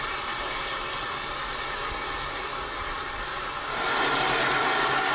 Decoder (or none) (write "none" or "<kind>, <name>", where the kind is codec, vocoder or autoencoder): none